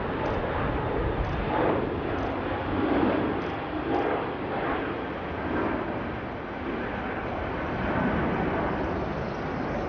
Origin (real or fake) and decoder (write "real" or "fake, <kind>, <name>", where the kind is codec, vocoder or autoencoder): real